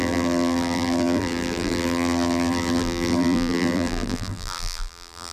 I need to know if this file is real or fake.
fake